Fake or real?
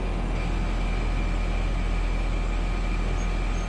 real